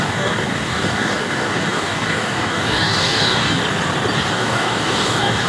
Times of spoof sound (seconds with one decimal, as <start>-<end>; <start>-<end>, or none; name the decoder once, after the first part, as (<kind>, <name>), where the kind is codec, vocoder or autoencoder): 0.0-3.6 (codec, DAC); 4.3-5.5